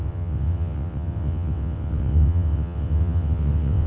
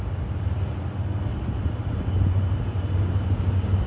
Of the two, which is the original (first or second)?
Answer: second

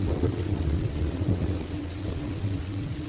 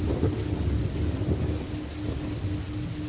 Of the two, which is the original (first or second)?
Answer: second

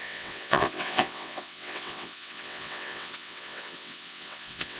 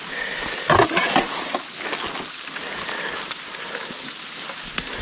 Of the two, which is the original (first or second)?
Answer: second